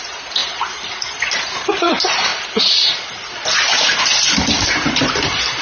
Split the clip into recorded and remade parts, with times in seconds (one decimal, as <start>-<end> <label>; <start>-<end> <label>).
0.0-2.3 remade; 2.3-5.6 recorded

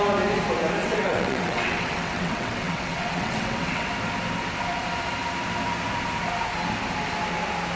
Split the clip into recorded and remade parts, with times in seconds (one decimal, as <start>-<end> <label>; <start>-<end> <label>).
0.0-0.8 recorded; 0.8-3.9 remade; 3.9-7.8 recorded

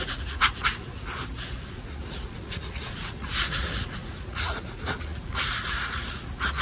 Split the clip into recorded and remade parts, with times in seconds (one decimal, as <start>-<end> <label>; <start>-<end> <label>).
0.0-0.9 remade; 0.9-1.7 recorded; 1.7-6.6 remade

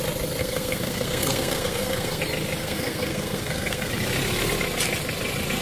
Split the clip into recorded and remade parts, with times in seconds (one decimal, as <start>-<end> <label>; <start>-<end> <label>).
0.0-0.4 recorded; 0.4-2.2 remade; 2.2-2.6 recorded; 2.6-3.9 remade; 3.9-5.6 recorded